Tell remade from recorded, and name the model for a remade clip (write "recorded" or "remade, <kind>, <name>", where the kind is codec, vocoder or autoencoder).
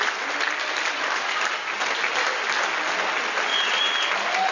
recorded